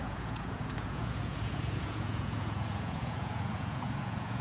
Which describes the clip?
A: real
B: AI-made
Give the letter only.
B